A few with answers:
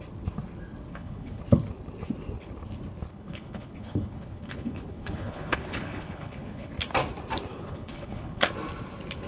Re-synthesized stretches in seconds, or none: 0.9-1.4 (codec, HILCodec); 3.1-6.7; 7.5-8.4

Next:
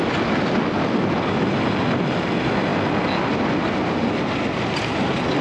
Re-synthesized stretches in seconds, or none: none

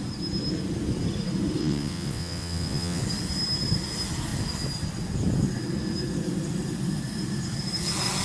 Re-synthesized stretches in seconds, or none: 1.6-3.0 (vocoder, WaveNeXt)

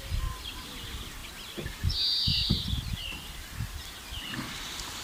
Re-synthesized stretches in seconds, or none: none

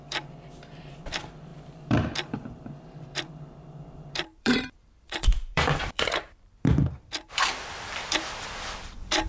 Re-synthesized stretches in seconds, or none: 0.0-9.3 (vocoder, BigVGAN v2)

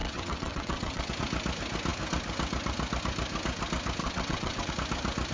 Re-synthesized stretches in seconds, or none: 0.0-1.1 (vocoder, WaveNeXt); 4.0-4.7

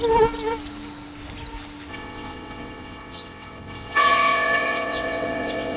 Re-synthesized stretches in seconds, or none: 1.9-5.8 (vocoder, WaveNeXt)

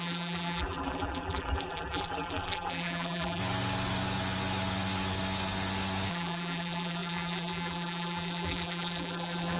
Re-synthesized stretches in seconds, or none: 0.0-3.4 (vocoder, BigVGAN v2); 6.1-9.6